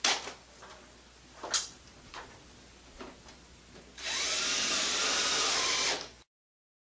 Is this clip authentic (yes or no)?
yes